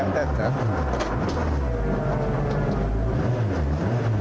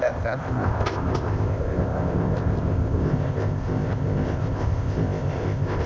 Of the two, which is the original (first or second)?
first